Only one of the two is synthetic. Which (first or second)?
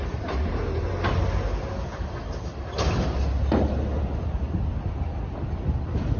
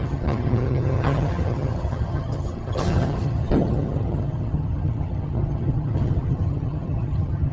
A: second